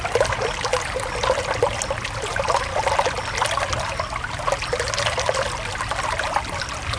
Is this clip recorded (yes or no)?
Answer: yes